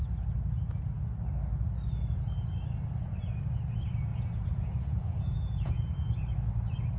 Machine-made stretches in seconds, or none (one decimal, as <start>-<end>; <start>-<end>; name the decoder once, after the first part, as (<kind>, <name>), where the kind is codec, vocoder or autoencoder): 4.1-5.9 (vocoder, Vocos)